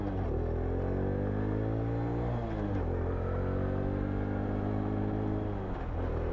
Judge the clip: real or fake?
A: real